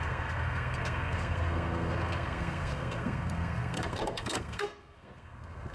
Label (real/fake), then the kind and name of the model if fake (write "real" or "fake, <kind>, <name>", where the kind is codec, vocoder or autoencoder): fake, codec, SNAC